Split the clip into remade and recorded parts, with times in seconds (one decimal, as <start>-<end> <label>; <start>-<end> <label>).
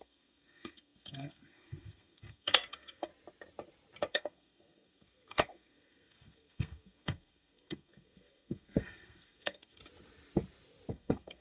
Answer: 0.0-3.1 remade; 3.1-4.1 recorded; 4.1-9.8 remade; 9.8-10.9 recorded; 10.9-11.4 remade